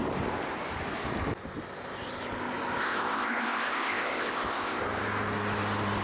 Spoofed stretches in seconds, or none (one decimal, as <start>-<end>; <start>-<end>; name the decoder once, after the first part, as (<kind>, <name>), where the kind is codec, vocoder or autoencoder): 2.8-4.8 (codec, ZipCodec)